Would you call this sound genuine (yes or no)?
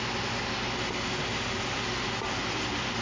yes